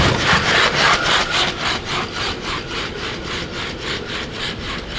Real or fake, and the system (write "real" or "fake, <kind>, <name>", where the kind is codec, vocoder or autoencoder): fake, vocoder, BigVGAN v2